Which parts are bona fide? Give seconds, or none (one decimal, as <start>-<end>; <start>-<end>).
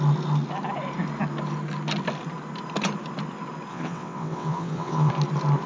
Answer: 0.0-3.7; 5.1-5.7